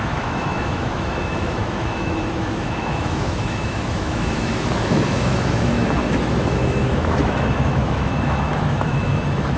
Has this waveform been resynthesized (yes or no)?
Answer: yes